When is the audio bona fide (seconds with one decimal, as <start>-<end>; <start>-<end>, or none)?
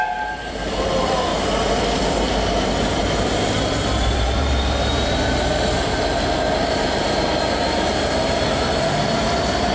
1.3-2.0